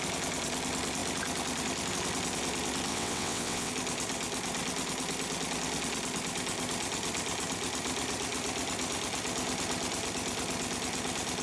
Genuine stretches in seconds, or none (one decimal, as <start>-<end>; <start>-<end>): 0.0-2.9; 3.7-11.4